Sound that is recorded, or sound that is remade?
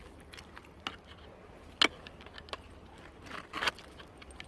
recorded